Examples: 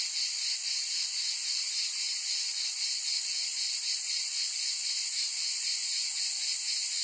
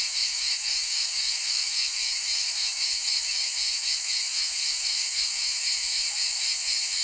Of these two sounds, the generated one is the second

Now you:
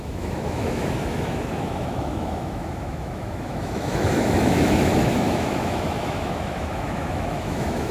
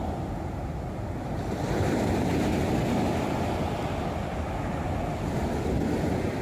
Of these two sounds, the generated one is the first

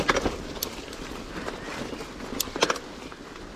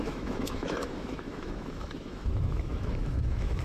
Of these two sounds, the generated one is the second